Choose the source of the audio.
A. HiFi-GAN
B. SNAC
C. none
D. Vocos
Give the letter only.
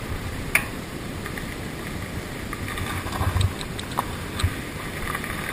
C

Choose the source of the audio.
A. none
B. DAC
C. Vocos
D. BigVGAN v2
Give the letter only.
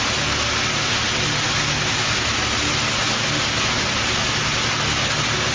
A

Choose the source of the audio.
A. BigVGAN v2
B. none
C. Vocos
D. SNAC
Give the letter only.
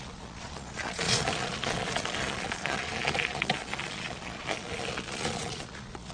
C